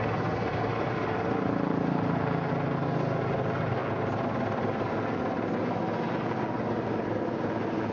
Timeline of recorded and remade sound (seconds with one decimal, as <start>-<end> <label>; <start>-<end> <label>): 0.0-7.9 recorded